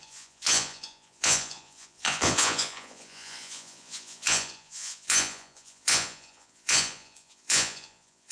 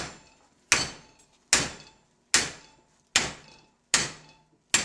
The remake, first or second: first